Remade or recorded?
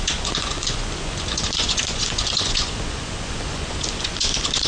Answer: remade